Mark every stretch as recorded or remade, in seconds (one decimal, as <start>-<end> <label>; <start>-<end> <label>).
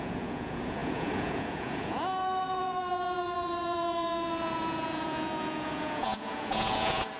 0.0-7.2 remade